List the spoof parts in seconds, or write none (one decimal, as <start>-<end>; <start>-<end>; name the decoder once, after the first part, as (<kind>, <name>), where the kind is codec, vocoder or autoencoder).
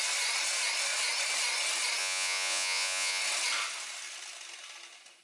2.0-3.2 (vocoder, Vocos)